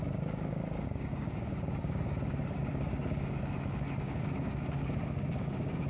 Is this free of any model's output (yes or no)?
no